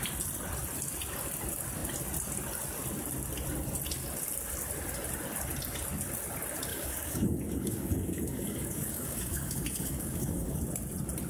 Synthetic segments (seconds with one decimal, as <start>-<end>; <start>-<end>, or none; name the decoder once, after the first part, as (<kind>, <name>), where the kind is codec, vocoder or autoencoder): 6.7-10.6 (codec, DAC)